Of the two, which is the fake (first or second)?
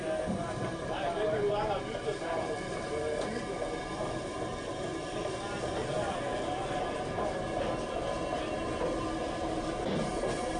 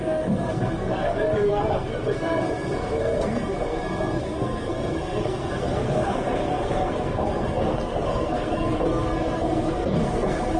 second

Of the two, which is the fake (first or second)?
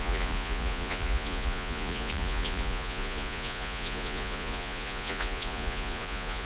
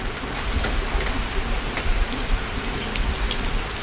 first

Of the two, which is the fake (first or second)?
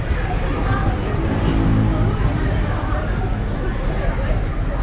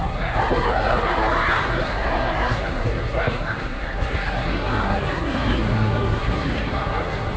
second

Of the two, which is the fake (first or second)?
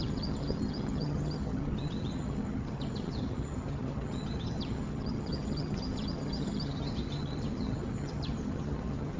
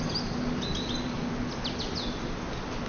first